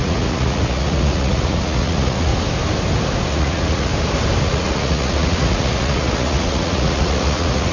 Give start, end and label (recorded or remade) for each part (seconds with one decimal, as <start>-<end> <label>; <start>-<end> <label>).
0.0-2.3 remade; 2.3-3.3 recorded; 3.3-3.9 remade; 3.9-4.4 recorded; 4.4-7.7 remade